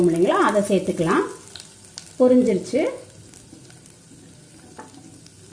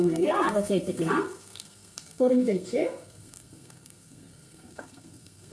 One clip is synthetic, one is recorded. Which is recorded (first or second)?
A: first